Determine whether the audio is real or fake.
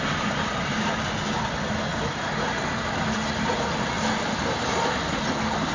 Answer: real